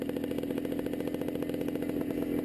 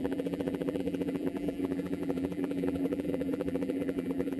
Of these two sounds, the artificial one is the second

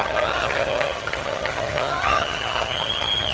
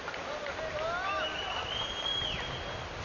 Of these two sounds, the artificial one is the first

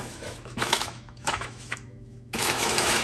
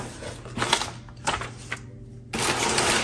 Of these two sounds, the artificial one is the first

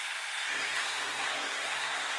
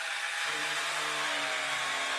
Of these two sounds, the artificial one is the first